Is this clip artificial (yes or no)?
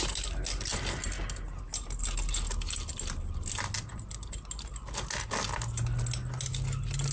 no